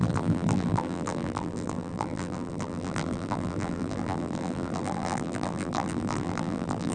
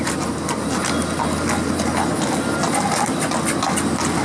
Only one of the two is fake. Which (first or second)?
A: first